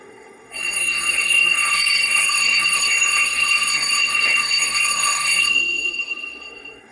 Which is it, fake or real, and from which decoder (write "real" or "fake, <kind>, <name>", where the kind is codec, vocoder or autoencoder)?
fake, codec, SNAC